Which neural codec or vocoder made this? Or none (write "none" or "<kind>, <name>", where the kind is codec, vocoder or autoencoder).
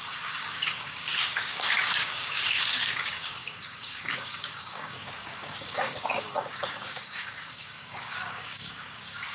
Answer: codec, DAC